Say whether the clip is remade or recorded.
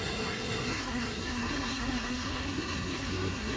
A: remade